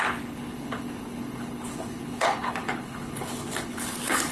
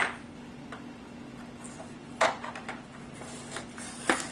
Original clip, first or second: second